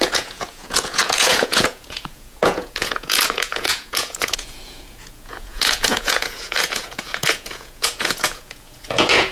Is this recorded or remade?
remade